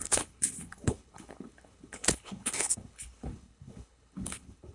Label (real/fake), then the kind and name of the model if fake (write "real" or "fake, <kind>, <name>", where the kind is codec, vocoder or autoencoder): fake, codec, HILCodec